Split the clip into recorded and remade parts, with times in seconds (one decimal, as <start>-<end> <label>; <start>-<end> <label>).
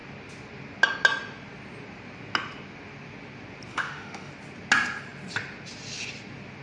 0.0-3.7 recorded; 3.7-4.3 remade; 4.3-6.6 recorded